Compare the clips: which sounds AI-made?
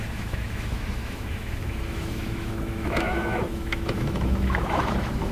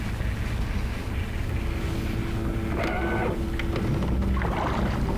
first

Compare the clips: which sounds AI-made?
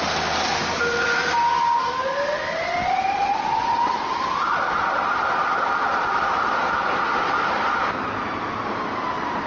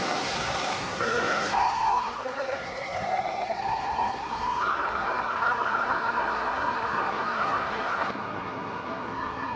second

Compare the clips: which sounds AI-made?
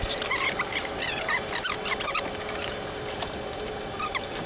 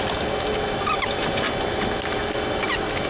first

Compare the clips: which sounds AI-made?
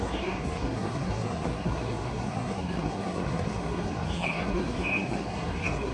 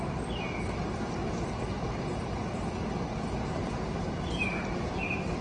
first